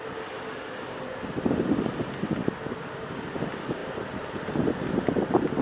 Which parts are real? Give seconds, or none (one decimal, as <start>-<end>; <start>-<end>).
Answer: 0.0-5.6